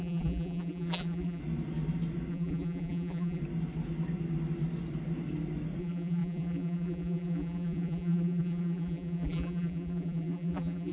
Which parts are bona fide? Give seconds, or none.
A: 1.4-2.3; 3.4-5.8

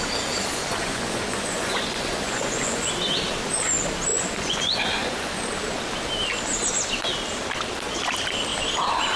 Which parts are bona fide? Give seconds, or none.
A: 0.0-0.5; 2.9-4.1; 5.4-9.2

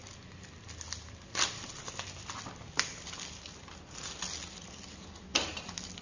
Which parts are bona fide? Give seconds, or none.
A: 0.0-6.0

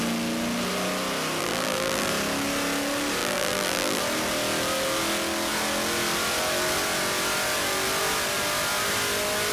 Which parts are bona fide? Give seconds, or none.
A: 0.0-1.4; 2.1-3.2; 4.0-9.5

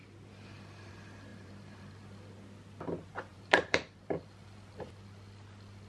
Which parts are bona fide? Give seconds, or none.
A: 0.0-1.3; 1.9-3.3; 4.2-5.9

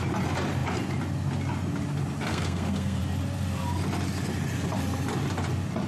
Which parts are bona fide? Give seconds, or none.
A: 0.0-2.3; 3.0-5.9

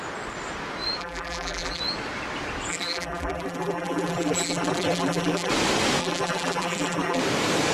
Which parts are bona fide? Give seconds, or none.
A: 0.0-1.0; 1.8-2.7; 5.5-6.0; 7.2-7.7